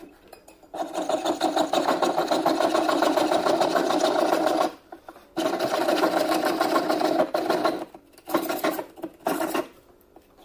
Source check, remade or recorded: recorded